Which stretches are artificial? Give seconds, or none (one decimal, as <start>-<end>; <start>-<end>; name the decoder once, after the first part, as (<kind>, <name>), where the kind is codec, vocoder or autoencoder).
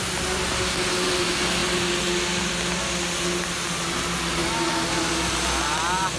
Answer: none